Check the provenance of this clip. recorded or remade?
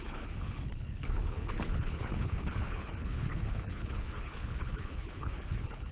remade